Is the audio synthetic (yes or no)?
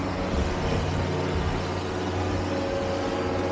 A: no